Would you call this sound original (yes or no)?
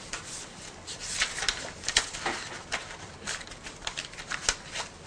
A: yes